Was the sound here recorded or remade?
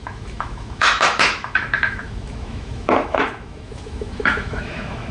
remade